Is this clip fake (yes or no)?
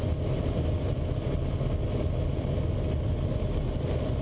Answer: no